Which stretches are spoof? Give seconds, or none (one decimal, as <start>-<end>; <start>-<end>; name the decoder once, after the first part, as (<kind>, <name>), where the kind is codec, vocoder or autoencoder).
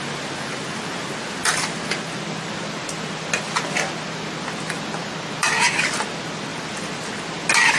none